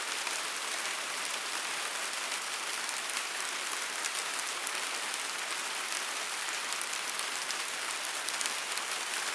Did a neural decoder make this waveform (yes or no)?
yes